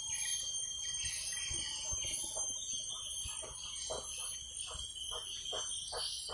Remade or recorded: recorded